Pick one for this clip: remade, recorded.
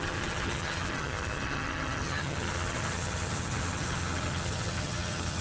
remade